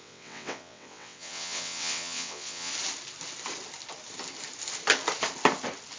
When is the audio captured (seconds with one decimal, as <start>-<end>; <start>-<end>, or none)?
2.7-6.0